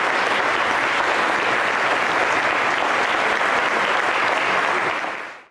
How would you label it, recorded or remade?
recorded